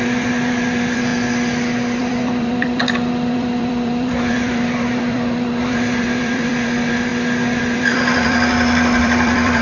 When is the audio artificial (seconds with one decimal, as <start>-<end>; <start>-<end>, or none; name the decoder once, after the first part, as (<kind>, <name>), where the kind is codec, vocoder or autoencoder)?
0.0-1.1 (vocoder, BigVGAN v2); 2.0-7.1; 7.6-9.6